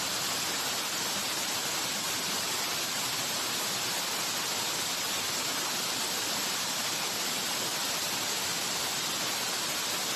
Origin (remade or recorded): recorded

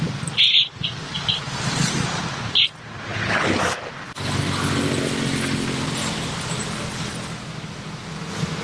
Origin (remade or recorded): recorded